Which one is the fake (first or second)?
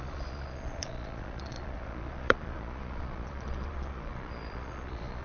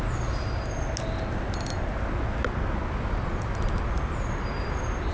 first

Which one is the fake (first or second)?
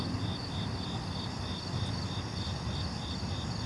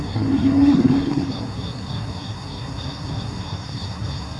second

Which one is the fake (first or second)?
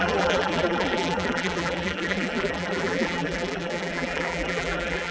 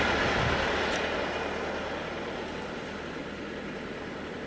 first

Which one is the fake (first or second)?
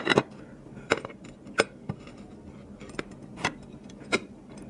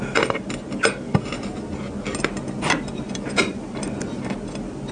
first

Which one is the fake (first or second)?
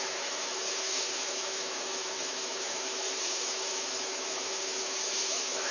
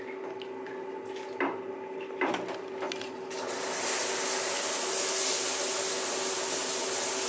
first